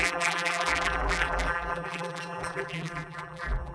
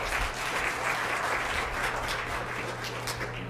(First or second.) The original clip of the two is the second